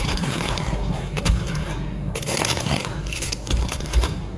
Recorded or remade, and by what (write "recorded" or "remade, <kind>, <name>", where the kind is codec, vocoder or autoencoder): remade, codec, SNAC